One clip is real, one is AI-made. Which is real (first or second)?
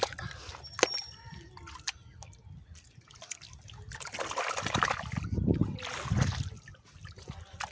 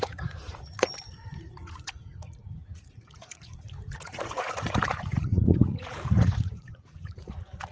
first